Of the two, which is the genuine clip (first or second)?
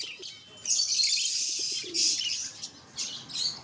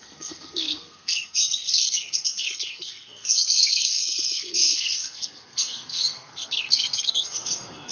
first